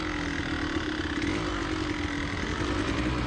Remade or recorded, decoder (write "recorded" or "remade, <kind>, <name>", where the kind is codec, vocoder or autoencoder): recorded